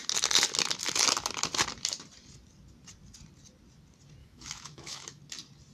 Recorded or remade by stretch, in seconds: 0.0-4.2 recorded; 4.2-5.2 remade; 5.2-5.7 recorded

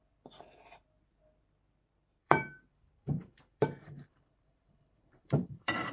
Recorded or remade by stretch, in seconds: 0.0-2.2 recorded; 2.2-5.9 remade

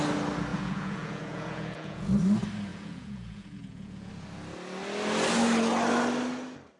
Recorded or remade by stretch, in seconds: 0.0-0.5 recorded; 0.5-2.1 remade; 2.1-2.7 recorded; 2.7-4.1 remade; 4.1-6.8 recorded

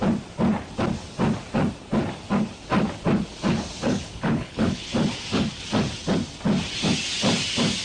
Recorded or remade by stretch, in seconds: 0.0-3.8 recorded; 3.8-4.9 remade; 4.9-7.8 recorded